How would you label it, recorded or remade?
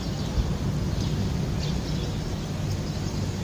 recorded